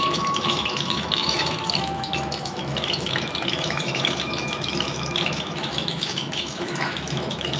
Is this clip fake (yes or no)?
yes